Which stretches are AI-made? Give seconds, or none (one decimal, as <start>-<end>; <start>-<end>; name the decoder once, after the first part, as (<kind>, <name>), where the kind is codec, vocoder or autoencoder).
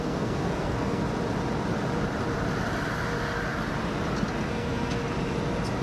0.0-1.0 (codec, SNAC); 4.5-5.0